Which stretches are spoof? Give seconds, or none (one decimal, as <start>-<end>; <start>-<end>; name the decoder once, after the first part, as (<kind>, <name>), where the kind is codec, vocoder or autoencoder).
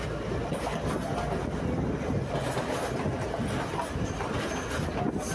none